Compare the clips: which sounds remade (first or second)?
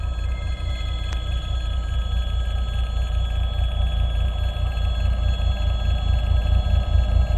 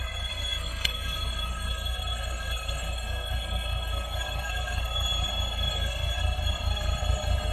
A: second